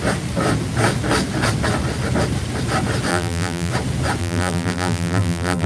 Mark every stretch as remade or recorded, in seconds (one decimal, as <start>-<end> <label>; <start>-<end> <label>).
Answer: 0.0-3.1 recorded; 3.1-3.7 remade; 3.7-4.2 recorded; 4.2-5.7 remade